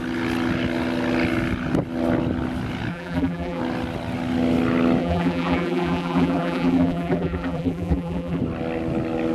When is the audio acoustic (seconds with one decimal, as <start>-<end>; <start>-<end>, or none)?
0.0-2.9; 3.6-5.0; 8.4-9.3